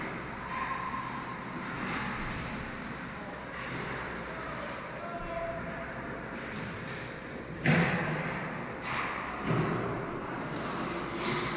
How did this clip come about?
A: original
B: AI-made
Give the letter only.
A